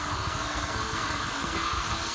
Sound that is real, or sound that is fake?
fake